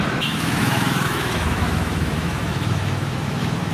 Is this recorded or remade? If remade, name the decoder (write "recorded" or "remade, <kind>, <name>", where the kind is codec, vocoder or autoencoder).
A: remade, autoencoder, DAC-VAE